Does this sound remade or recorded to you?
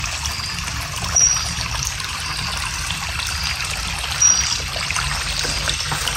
recorded